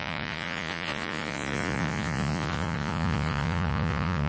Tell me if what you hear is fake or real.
fake